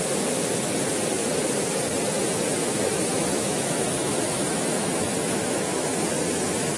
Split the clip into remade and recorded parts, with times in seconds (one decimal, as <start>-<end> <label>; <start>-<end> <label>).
0.0-2.6 recorded; 2.6-6.8 remade